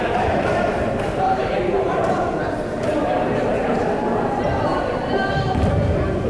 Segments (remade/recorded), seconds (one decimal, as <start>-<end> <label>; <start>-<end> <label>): 0.0-3.8 remade; 3.8-4.7 recorded; 4.7-5.3 remade; 5.3-6.3 recorded